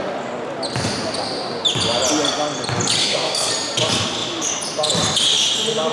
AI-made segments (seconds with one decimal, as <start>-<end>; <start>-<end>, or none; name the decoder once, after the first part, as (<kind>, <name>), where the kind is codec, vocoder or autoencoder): 3.0-3.5 (codec, SNAC)